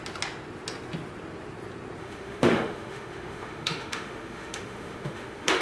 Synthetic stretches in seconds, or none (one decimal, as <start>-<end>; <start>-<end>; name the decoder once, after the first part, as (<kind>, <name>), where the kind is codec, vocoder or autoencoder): 2.0-5.6 (autoencoder, DAC-VAE)